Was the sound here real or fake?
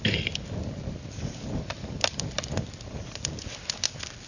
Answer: real